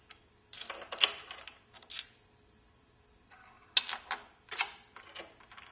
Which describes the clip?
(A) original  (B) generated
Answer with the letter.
A